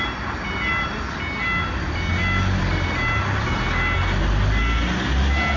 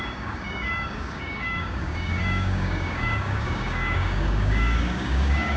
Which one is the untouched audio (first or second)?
first